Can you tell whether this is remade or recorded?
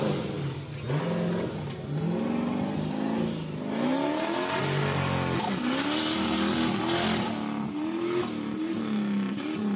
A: recorded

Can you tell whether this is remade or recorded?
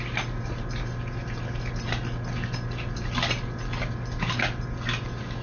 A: recorded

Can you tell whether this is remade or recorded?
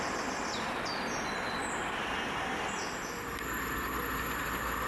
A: recorded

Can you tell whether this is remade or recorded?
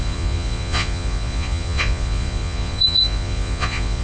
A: remade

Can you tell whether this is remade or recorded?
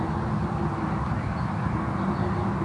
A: recorded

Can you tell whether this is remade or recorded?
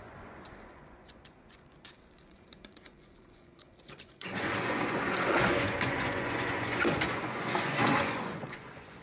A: remade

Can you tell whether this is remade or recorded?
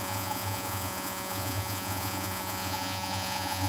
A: remade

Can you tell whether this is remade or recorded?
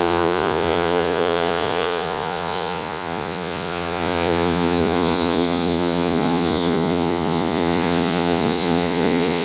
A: remade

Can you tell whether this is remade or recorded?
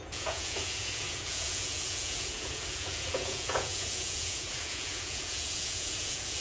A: remade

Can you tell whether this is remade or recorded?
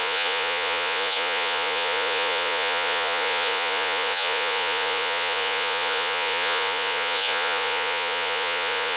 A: remade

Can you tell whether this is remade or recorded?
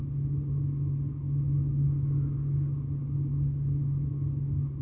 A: recorded